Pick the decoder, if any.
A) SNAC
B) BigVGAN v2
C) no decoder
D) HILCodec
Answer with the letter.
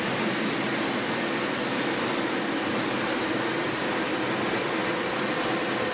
C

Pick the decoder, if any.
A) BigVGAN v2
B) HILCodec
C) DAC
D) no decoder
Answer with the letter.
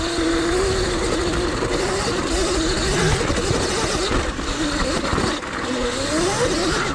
D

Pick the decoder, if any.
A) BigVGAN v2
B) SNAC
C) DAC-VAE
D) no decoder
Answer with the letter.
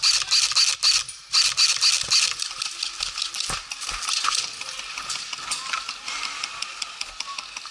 D